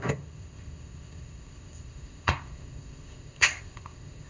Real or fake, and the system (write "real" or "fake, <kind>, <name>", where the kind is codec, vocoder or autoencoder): fake, codec, ZipCodec